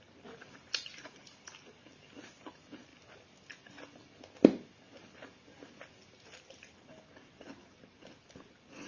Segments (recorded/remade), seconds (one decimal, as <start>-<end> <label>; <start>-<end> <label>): 0.0-8.9 recorded